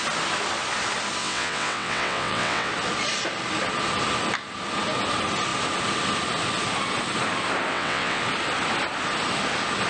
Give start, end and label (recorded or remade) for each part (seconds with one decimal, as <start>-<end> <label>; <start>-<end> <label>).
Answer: 0.0-1.2 recorded; 1.2-2.7 remade; 2.7-7.7 recorded; 7.7-8.2 remade; 8.2-9.9 recorded